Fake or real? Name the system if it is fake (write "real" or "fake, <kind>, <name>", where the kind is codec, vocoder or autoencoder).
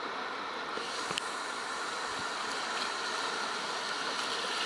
real